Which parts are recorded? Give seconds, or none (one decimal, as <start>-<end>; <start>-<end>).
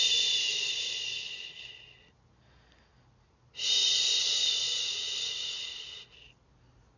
0.0-4.7; 5.8-7.0